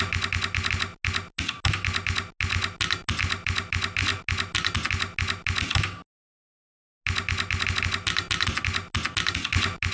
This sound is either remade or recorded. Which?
recorded